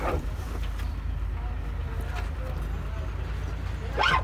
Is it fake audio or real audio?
real